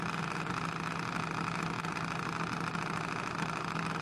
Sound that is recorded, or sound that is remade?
recorded